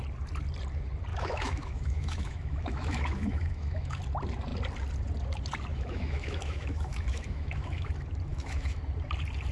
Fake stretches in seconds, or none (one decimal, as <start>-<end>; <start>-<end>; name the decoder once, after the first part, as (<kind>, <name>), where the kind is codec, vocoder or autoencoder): 1.1-4.0 (autoencoder, DAC-VAE); 5.7-7.9; 8.3-8.8